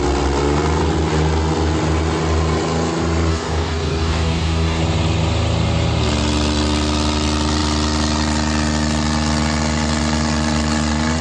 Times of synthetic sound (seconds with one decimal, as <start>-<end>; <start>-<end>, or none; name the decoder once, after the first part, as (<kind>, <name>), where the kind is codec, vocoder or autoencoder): 3.3-4.8 (codec, DAC)